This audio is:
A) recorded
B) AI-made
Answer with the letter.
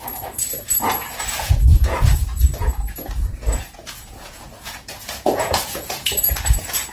B